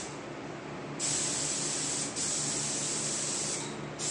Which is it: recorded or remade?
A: recorded